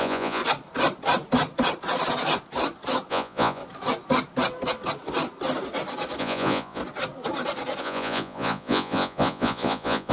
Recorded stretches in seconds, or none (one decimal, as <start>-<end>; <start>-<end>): 0.4-3.1; 3.6-6.2; 6.8-7.8